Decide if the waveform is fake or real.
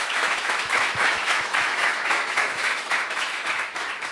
fake